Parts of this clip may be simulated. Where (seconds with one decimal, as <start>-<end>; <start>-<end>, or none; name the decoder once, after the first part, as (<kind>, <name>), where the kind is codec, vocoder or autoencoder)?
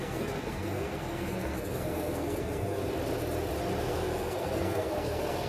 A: 0.0-2.8 (codec, SNAC); 3.8-5.5